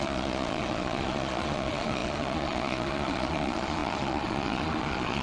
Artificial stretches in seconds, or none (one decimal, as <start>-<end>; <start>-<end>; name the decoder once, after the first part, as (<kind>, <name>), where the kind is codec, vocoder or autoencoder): 0.0-5.2 (vocoder, Vocos)